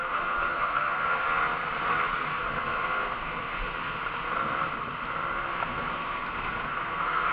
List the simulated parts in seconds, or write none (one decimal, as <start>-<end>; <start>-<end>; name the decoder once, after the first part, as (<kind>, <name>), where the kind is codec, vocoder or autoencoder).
0.0-1.2 (codec, SNAC); 2.3-4.0; 5.5-7.3